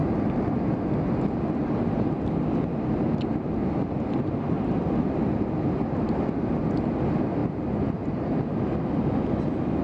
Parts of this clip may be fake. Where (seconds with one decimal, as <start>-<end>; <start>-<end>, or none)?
0.0-0.6; 1.8-6.5; 7.4-8.5